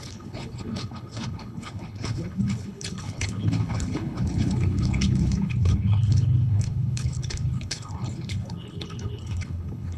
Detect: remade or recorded remade